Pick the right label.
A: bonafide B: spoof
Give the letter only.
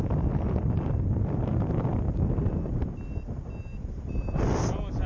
A